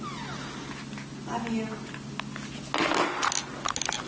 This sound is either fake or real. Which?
real